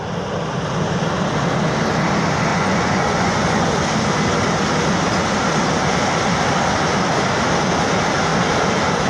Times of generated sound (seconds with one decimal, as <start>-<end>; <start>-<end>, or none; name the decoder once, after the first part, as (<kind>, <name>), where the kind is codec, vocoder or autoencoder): 2.5-3.6 (vocoder, Vocos)